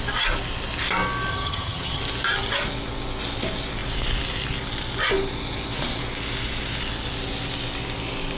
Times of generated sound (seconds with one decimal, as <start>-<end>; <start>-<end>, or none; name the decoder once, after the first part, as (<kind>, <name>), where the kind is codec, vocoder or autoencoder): 1.3-2.0 (vocoder, HiFi-GAN)